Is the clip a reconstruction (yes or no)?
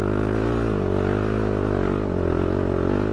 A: no